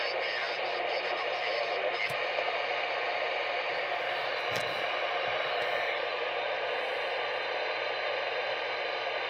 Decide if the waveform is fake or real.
real